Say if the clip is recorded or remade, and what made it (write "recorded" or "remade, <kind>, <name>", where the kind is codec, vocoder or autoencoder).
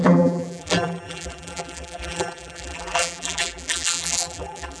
remade, vocoder, BigVGAN v2